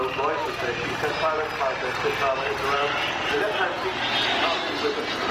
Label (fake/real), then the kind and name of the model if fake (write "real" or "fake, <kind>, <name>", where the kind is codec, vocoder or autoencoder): real